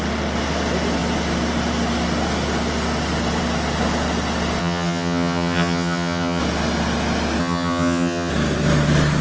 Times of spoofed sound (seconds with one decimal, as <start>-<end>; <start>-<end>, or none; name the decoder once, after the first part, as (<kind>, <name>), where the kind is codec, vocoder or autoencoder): 4.6-6.4 (vocoder, HiFi-GAN); 7.4-8.3